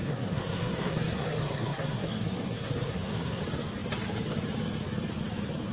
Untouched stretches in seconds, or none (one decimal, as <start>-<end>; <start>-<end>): 3.4-5.7